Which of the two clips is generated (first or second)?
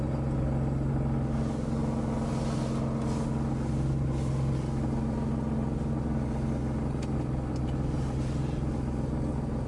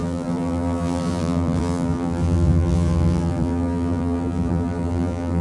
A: second